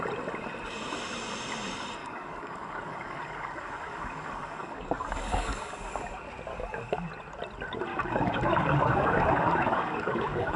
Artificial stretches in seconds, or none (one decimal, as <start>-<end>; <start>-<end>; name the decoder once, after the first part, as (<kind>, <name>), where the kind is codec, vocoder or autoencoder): 2.0-5.9 (codec, DAC); 6.5-7.1; 7.9-10.6